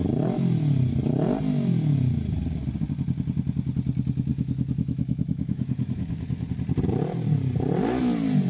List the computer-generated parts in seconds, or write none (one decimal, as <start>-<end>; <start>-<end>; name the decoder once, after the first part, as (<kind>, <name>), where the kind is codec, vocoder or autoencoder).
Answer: 4.3-6.5 (autoencoder, DAC-VAE)